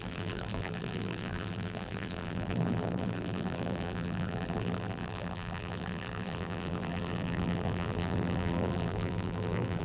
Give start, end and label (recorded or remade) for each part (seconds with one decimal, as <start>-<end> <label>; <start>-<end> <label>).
0.0-9.8 remade